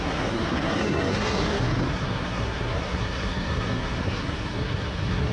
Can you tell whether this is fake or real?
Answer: fake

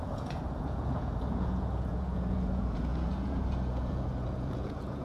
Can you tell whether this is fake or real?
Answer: fake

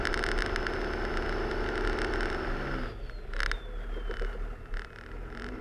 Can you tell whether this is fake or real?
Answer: real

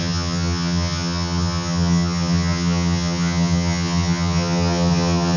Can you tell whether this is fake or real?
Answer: fake